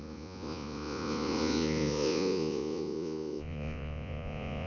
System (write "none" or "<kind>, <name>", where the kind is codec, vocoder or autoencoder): vocoder, Vocos